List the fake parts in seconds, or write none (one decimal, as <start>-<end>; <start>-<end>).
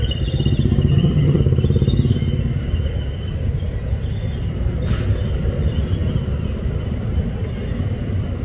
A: 0.9-1.4